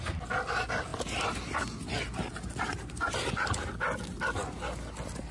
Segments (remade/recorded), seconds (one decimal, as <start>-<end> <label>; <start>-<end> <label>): 0.0-5.3 recorded